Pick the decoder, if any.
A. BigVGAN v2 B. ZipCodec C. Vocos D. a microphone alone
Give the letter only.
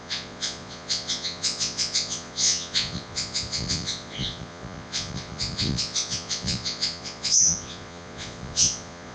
C